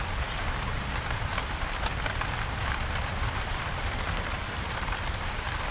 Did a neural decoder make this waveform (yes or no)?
yes